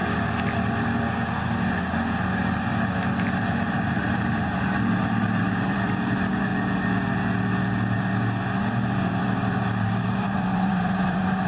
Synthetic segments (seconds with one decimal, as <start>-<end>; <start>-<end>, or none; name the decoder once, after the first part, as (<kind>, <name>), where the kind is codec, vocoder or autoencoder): 3.6-6.5 (vocoder, BigVGAN v2); 8.6-11.5